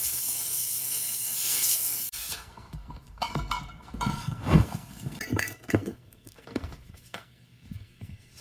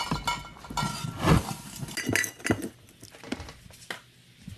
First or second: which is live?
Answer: second